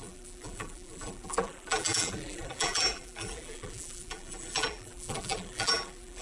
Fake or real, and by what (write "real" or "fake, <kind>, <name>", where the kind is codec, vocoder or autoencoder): fake, vocoder, BigVGAN v2